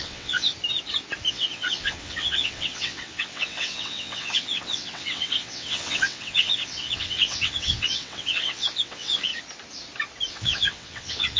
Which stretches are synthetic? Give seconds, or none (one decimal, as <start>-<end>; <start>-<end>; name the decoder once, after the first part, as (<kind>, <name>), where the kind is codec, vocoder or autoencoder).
0.0-0.5 (vocoder, WaveNeXt); 1.3-9.3; 10.3-11.4

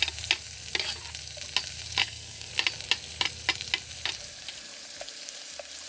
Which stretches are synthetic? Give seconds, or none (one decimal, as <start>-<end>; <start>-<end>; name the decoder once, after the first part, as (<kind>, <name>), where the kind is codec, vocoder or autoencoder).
2.0-2.5 (codec, SNAC)

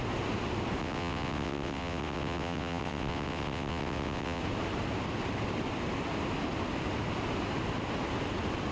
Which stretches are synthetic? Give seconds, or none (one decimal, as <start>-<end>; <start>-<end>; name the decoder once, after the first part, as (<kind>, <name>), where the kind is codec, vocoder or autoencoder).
0.8-4.4 (vocoder, WaveNeXt)